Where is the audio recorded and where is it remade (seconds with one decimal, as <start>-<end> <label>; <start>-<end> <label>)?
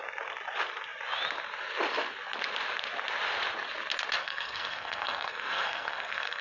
0.0-4.2 recorded; 4.2-6.4 remade